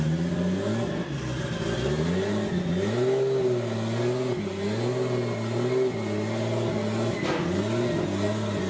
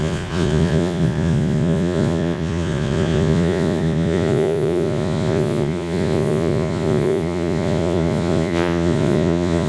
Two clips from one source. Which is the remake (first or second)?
second